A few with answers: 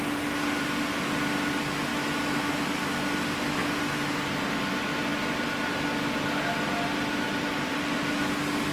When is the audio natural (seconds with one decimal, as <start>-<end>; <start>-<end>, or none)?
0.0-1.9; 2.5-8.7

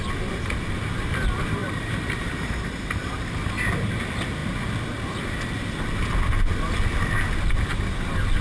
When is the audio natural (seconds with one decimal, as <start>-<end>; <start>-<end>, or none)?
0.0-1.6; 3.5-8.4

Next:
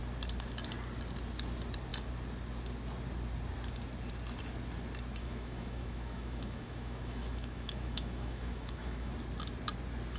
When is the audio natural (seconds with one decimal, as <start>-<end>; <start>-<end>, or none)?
0.0-5.2; 9.1-10.2

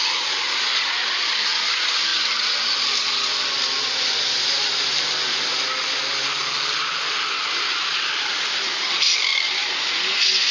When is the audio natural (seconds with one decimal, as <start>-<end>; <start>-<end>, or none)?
0.0-9.3; 9.9-10.5